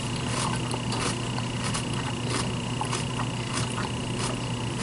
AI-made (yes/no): no